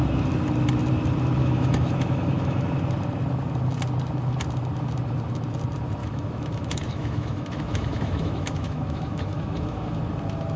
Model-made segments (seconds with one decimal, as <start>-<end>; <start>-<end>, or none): 1.4-2.6; 6.0-10.0